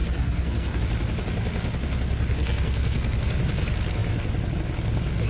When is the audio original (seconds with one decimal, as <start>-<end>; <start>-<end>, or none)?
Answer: 0.8-2.4; 3.3-5.3